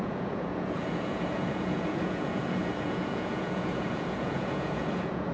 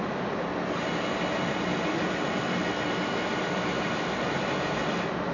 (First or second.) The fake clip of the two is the first